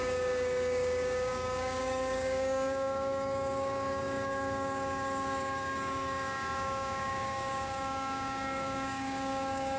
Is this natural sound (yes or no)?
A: no